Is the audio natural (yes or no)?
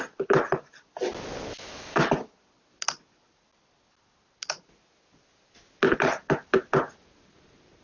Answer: yes